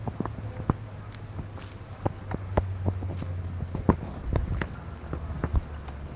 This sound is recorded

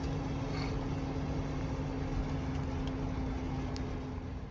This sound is recorded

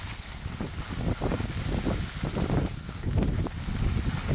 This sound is recorded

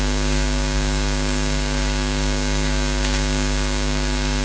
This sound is remade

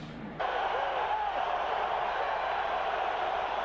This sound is remade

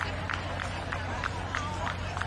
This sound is recorded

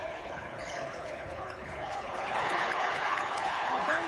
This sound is remade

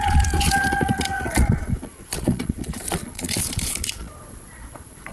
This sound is remade